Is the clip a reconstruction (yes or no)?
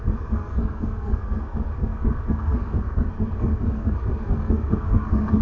yes